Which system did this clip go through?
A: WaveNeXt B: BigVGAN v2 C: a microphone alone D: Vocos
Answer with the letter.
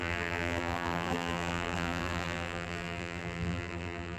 B